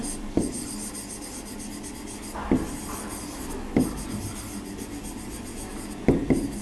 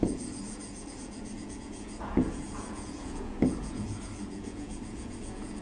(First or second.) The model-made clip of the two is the second